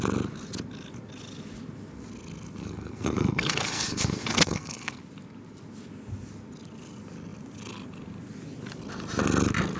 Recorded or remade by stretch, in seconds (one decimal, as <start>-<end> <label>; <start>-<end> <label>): 0.0-2.6 recorded; 2.6-5.0 remade; 5.0-9.8 recorded